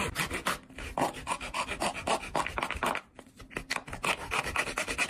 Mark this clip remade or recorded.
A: recorded